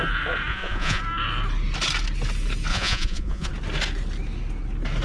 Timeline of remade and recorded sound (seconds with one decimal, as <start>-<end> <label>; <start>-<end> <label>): 0.0-0.5 recorded; 0.5-1.0 remade; 1.0-2.7 recorded; 2.7-3.5 remade; 3.5-5.0 recorded